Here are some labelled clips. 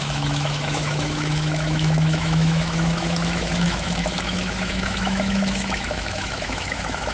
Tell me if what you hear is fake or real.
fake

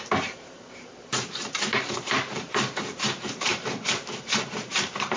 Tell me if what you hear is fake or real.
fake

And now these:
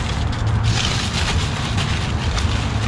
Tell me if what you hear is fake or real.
real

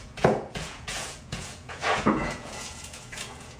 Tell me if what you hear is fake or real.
fake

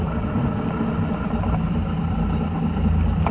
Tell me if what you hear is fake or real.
real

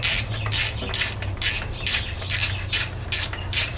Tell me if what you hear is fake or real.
real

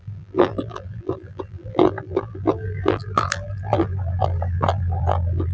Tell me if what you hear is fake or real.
fake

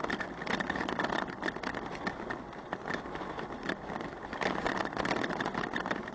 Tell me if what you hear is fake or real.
real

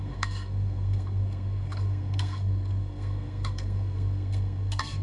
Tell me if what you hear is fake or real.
fake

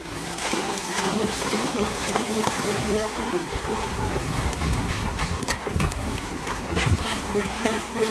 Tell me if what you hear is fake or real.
fake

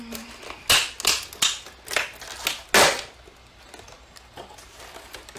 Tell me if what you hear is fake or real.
real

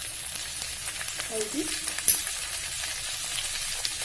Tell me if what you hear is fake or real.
real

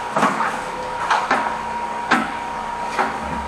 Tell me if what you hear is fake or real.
fake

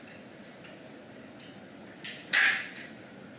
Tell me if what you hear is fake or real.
real